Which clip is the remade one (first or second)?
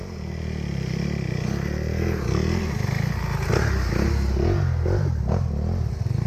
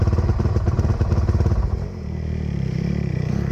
second